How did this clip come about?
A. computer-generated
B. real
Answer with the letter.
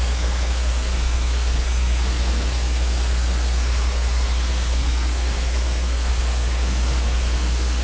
A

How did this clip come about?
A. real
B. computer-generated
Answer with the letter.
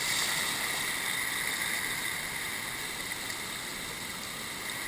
A